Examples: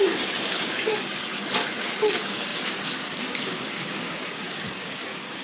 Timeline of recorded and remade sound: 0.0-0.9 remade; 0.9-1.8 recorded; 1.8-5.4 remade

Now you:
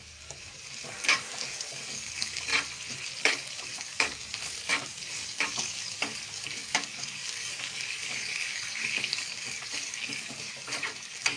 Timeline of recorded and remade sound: 0.0-2.5 remade; 2.5-3.2 recorded; 3.2-11.4 remade

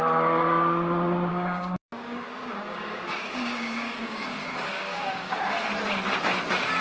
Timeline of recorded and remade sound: 0.0-1.3 recorded; 1.3-5.4 remade; 5.4-6.8 recorded